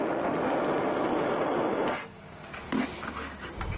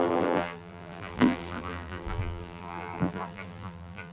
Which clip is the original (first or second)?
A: first